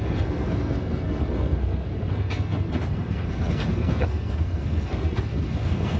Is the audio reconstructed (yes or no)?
yes